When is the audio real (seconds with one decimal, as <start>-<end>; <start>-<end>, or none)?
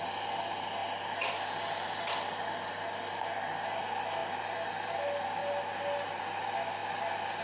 0.0-7.4